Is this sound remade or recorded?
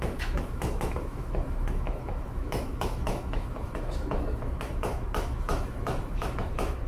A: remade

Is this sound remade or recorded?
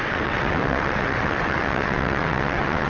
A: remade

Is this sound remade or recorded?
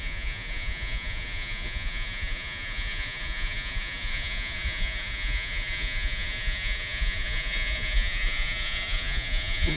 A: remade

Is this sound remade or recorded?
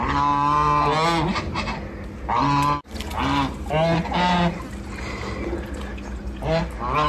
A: recorded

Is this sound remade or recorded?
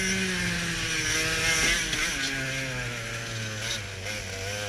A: recorded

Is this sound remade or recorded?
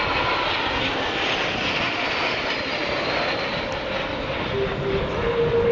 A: recorded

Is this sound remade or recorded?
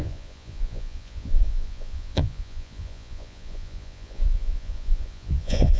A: remade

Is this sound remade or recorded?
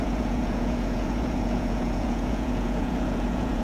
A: remade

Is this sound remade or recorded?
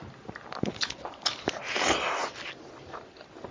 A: recorded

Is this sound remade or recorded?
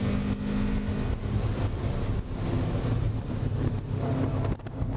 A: recorded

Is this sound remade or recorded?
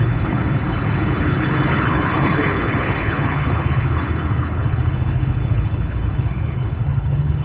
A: remade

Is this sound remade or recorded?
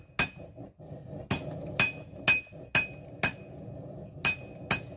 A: recorded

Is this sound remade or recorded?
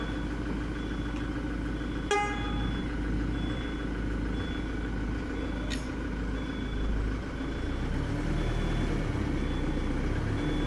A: recorded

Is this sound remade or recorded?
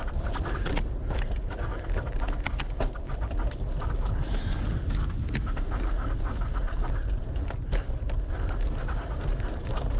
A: recorded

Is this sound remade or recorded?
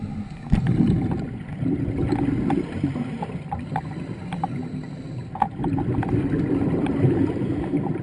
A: recorded